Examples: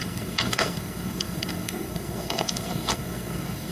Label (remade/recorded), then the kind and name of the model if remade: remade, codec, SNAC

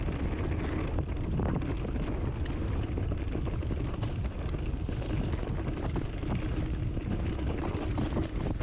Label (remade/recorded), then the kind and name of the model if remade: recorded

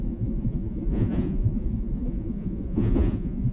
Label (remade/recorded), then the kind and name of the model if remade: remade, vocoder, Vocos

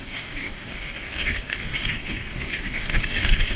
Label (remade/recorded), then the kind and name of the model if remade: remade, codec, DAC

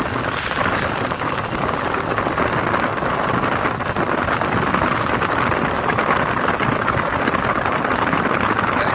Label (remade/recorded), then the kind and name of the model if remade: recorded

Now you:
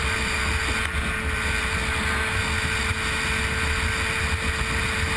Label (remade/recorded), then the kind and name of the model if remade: recorded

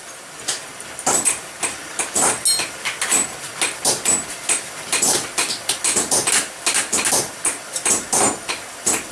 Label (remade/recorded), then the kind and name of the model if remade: recorded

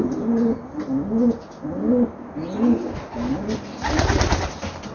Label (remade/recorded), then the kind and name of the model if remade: recorded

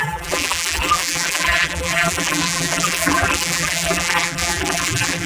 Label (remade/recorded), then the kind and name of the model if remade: remade, vocoder, BigVGAN v2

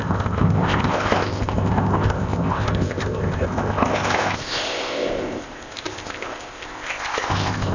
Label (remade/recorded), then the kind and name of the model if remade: remade, codec, ZipCodec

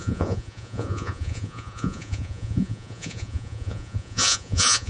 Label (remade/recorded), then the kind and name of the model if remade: remade, vocoder, Vocos